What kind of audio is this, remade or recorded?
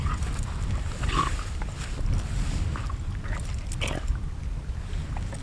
recorded